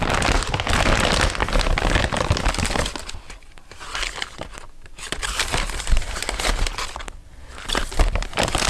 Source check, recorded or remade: recorded